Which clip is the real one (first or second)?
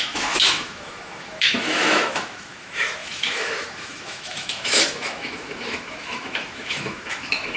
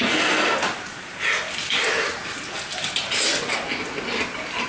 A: second